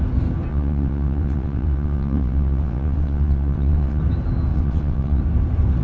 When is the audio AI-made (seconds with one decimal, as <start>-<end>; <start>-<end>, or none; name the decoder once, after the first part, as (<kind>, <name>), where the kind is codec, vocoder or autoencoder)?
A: 0.5-4.0 (vocoder, WaveNeXt); 4.5-5.2